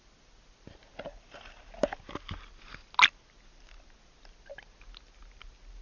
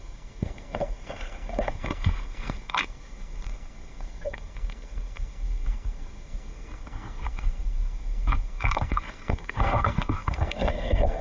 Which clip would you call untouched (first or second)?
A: first